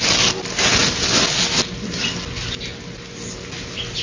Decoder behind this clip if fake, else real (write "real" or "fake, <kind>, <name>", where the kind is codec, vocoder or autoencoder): real